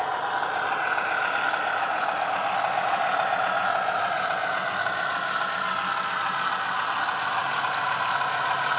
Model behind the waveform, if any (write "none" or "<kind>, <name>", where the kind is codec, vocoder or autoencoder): none